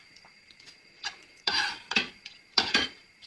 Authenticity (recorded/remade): remade